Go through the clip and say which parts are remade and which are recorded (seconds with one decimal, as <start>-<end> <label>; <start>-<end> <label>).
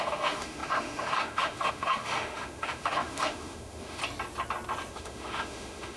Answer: 0.0-4.0 remade; 4.0-4.9 recorded; 4.9-6.0 remade